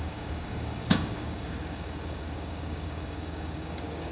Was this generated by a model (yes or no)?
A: yes